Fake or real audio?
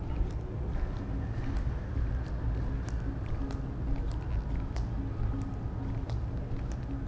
real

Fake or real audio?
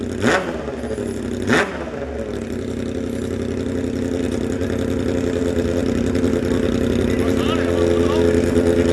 real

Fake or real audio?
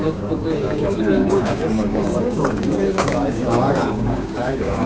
fake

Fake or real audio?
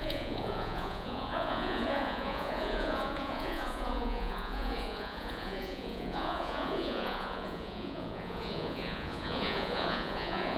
fake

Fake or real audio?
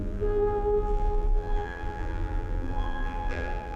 fake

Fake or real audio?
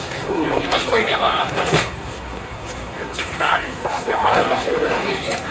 fake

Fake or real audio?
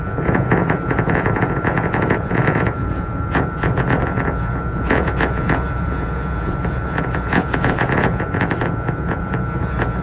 fake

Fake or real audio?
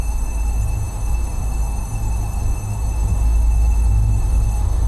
fake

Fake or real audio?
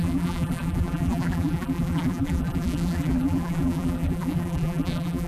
fake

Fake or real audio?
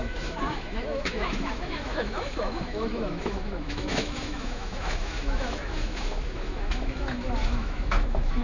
fake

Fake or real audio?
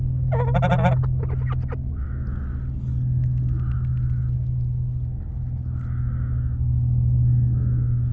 real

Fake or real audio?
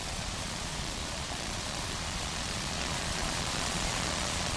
fake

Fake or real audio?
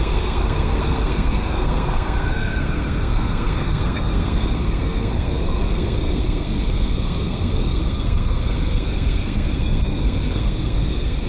fake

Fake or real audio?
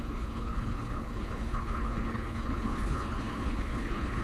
fake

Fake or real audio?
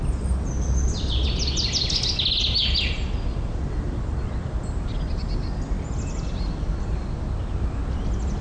real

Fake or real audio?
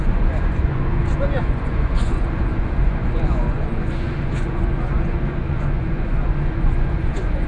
fake